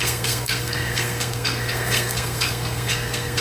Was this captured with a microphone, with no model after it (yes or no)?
no